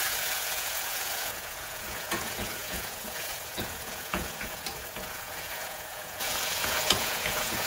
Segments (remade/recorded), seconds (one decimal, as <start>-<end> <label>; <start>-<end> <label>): 0.0-7.7 remade